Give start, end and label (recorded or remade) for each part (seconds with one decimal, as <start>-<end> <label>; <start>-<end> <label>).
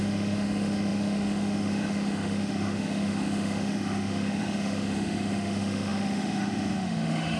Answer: 0.0-7.4 remade